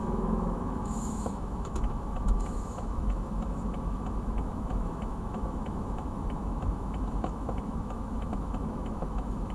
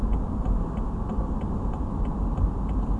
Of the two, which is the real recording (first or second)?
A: second